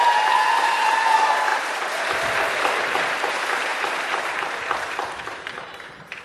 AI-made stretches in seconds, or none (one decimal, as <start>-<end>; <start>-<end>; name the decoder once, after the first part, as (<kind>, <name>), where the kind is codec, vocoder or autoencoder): 0.0-6.2 (vocoder, BigVGAN v2)